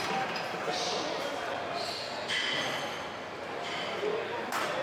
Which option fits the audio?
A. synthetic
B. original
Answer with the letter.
B